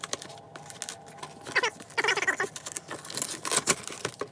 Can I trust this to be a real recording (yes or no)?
yes